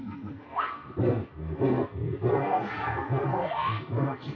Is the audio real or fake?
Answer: fake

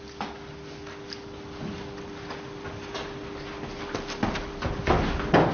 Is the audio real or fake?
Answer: real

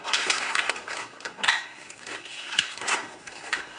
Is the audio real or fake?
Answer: fake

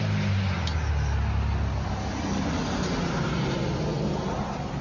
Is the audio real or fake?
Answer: real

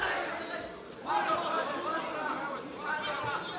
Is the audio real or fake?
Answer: real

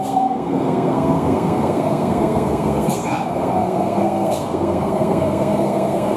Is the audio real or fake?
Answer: fake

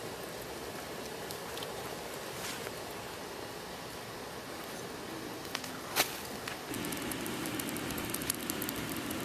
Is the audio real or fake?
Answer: real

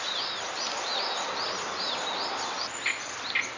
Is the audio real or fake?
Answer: real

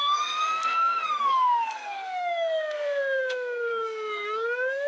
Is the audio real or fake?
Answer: fake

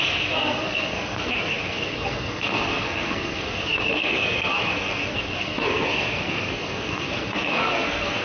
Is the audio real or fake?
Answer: fake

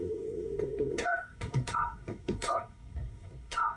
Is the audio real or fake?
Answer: fake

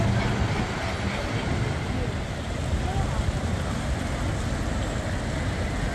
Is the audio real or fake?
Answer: real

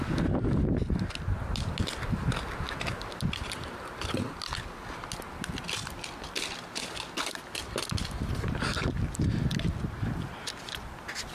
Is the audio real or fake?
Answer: real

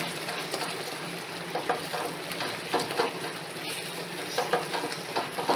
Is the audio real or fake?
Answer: real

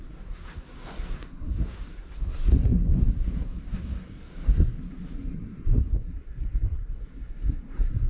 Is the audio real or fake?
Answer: fake